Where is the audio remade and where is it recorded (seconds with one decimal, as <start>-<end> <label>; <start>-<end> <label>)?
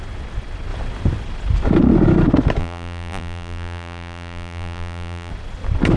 0.0-2.6 recorded; 2.6-5.3 remade; 5.3-6.0 recorded